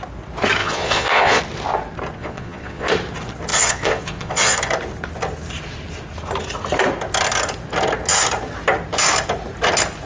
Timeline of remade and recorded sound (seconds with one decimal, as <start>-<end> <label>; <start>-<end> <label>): 0.0-0.6 recorded; 0.6-1.4 remade; 1.4-2.2 recorded; 2.2-2.9 remade; 2.9-3.5 recorded; 3.5-4.6 remade; 4.6-10.1 recorded